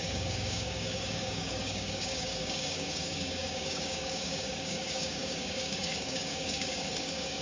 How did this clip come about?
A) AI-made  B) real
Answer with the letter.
A